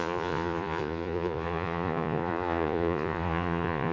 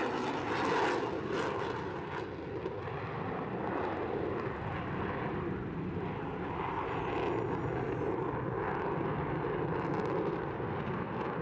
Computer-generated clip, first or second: first